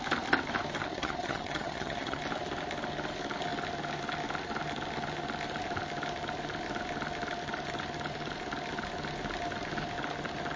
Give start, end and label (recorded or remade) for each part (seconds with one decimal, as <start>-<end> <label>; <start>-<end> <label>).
0.0-0.9 recorded; 0.9-2.2 remade; 2.2-10.6 recorded